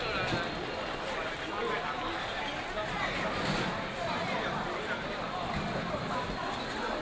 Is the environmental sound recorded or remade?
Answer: recorded